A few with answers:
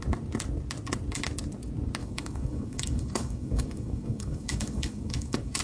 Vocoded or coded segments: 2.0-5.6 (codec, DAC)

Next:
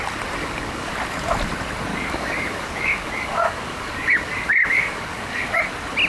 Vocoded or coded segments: 0.4-0.9 (codec, DAC); 1.9-5.6